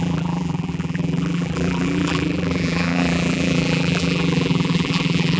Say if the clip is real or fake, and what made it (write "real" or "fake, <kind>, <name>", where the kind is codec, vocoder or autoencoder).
fake, vocoder, BigVGAN v2